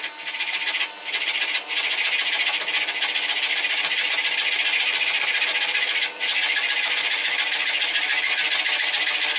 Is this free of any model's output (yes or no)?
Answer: yes